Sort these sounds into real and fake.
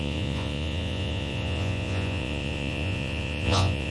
fake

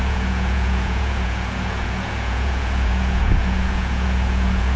fake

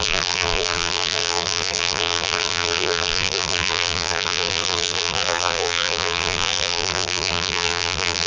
fake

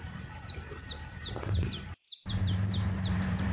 fake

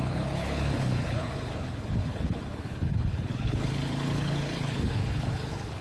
fake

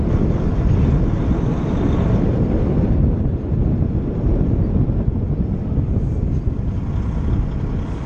real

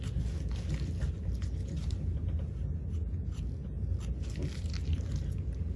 real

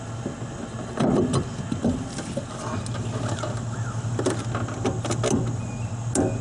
real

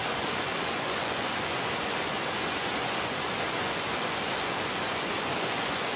fake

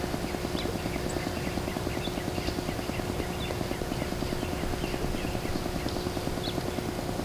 real